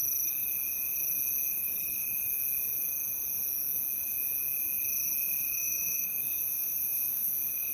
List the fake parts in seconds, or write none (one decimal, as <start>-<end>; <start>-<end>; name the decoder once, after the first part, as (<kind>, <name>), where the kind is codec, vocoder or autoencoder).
5.6-7.3 (autoencoder, DAC-VAE)